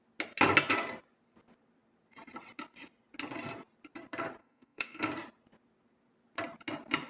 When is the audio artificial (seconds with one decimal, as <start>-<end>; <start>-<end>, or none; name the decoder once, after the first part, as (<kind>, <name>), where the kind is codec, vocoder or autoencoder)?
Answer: 4.4-5.1 (codec, SNAC)